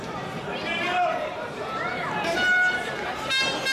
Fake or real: fake